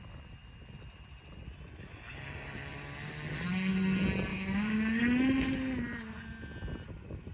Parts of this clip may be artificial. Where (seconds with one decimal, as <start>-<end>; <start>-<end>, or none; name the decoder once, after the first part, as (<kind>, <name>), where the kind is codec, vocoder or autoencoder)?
4.3-5.0 (codec, DAC)